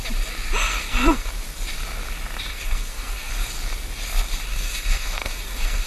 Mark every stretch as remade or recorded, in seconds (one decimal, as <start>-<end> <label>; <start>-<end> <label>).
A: 0.0-0.7 recorded; 0.7-1.3 remade; 1.3-2.5 recorded; 2.5-3.3 remade; 3.3-4.5 recorded; 4.5-5.9 remade